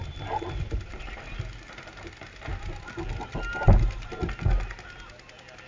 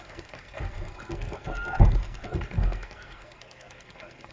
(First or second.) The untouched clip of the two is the first